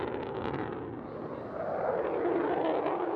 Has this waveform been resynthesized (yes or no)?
no